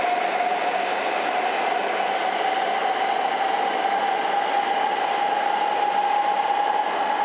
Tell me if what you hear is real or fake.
real